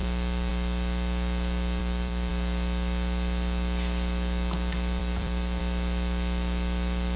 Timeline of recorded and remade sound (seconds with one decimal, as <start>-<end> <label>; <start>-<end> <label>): 0.0-1.8 recorded; 1.8-2.3 remade; 2.3-5.0 recorded; 5.0-5.6 remade; 5.6-7.2 recorded